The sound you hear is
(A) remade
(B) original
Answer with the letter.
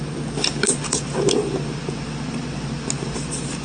B